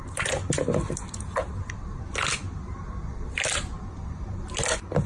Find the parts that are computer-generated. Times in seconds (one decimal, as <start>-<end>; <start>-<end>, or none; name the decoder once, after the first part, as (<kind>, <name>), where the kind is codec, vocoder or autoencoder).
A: 1.4-4.1 (vocoder, BigVGAN v2)